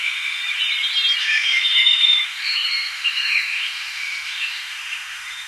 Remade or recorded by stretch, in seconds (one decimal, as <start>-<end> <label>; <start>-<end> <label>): 0.0-0.4 remade; 0.4-1.2 recorded; 1.2-5.5 remade